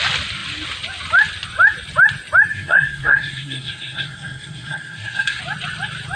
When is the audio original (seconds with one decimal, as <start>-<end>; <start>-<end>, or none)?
0.0-2.5; 5.4-6.2

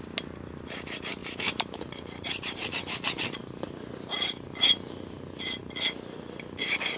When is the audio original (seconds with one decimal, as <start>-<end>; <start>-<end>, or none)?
0.0-1.2; 2.7-7.0

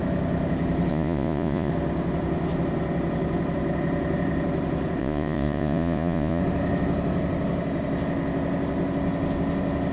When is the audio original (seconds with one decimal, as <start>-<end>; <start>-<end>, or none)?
0.0-0.9; 1.7-5.0; 6.4-9.9

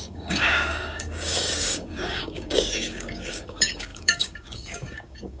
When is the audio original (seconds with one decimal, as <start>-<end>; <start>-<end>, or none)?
none

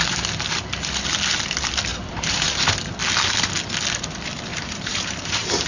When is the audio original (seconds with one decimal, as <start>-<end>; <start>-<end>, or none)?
0.0-1.9; 2.6-4.5

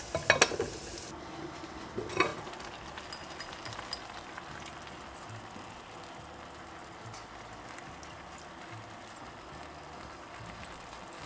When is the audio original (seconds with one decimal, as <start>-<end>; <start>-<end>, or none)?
0.0-11.3